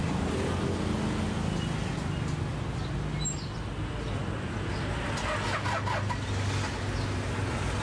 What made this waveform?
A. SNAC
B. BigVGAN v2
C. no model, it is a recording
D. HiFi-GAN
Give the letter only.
C